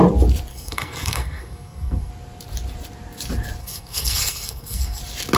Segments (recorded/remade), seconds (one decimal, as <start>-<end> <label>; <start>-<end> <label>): 0.0-0.5 recorded; 0.5-2.1 remade; 2.1-3.6 recorded; 3.6-5.0 remade; 5.0-5.4 recorded